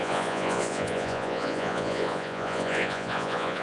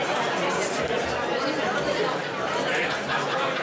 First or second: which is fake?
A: first